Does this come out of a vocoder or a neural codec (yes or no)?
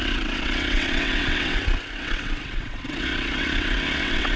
yes